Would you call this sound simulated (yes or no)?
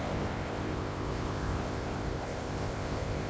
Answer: yes